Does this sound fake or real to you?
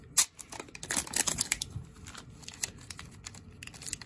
real